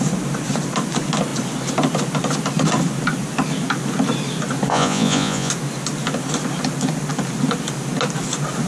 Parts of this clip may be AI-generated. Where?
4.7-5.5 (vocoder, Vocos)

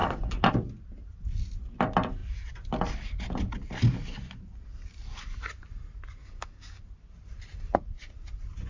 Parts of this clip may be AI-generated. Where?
0.0-0.5 (codec, DAC); 6.2-6.8

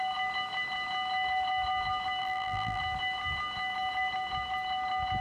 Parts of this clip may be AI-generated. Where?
2.2-2.8 (vocoder, BigVGAN v2)

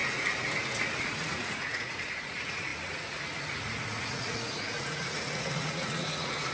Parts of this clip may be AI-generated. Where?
0.0-6.5 (vocoder, Vocos)

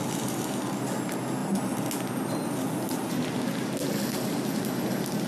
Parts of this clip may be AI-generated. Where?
none

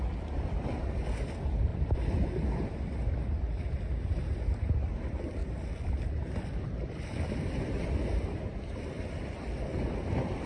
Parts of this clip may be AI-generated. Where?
none

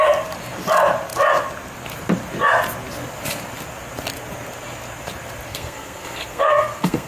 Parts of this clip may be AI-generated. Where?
5.5-7.1 (codec, SNAC)

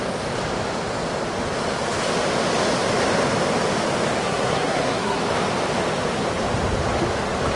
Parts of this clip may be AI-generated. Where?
4.2-5.2 (codec, SNAC)